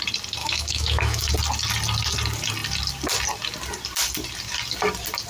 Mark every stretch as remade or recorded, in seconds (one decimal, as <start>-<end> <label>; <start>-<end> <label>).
0.0-0.4 recorded; 0.4-1.3 remade; 1.3-5.3 recorded